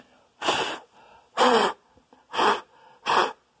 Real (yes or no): yes